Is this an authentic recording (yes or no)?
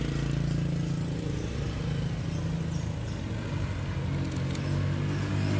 yes